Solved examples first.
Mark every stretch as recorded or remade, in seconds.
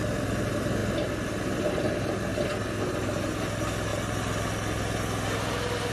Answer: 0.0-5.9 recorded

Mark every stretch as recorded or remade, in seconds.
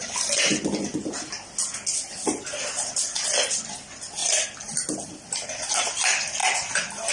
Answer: 0.0-0.5 remade; 0.5-2.5 recorded; 2.5-7.1 remade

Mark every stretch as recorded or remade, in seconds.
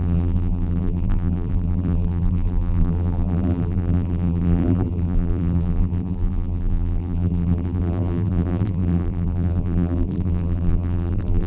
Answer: 0.0-11.5 remade